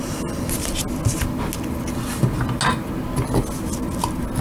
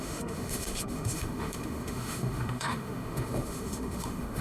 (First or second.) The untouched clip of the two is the first